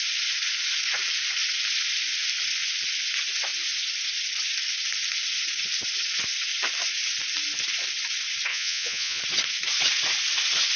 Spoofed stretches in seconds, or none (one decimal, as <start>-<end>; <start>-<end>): 8.5-9.2

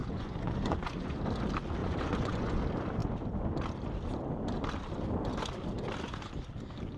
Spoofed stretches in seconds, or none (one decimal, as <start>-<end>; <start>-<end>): 0.0-1.2; 1.8-2.6

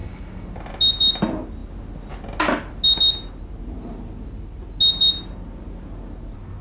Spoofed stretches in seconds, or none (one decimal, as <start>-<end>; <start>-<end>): none

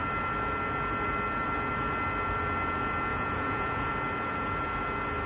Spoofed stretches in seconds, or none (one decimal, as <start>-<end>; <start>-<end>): 3.1-3.9

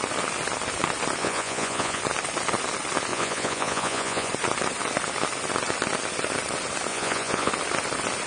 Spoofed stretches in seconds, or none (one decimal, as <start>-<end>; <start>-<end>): 1.2-2.0; 3.1-4.3; 6.9-7.5